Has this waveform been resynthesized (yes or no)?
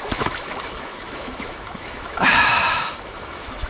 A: yes